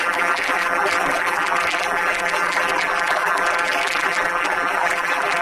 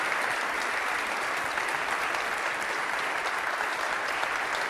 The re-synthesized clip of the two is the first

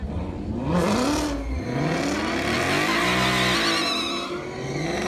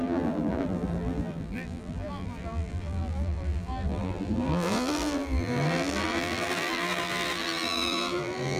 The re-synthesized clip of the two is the second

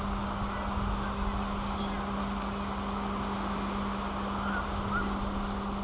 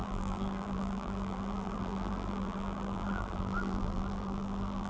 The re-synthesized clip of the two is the second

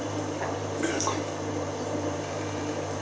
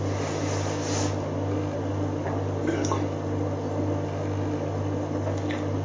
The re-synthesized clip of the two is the first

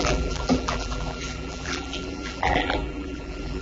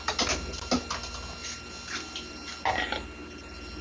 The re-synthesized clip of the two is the first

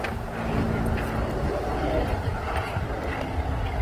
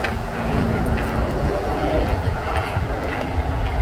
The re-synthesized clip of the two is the second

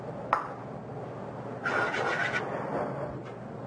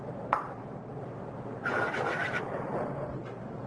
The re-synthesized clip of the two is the second